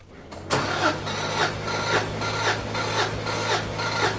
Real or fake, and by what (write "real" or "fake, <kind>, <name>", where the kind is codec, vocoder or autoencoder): real